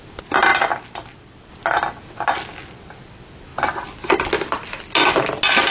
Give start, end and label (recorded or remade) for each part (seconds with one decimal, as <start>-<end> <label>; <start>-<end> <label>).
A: 0.0-5.7 recorded